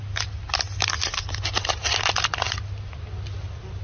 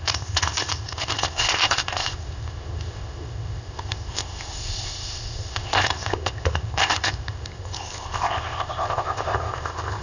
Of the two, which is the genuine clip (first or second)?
first